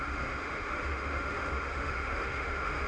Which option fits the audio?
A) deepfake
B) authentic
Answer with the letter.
A